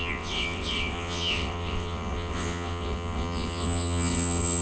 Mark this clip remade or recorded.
remade